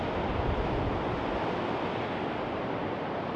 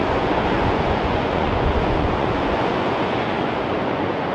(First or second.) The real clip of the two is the first